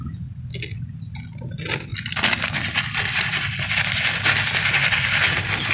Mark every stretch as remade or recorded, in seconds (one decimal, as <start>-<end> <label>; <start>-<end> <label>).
0.0-5.7 recorded